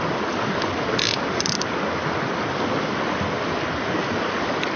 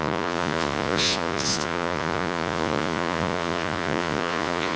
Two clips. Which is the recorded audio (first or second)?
first